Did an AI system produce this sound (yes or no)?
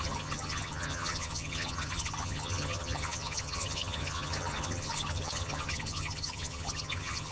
yes